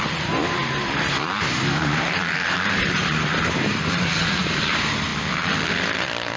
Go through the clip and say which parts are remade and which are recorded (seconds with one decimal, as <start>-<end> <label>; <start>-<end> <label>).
0.0-5.1 remade; 5.1-5.7 recorded; 5.7-6.4 remade